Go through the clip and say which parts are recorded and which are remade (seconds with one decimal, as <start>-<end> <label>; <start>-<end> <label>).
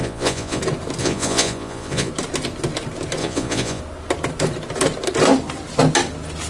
0.0-0.6 remade; 0.6-1.0 recorded; 1.0-2.1 remade; 2.1-3.2 recorded; 3.2-3.8 remade; 3.8-6.5 recorded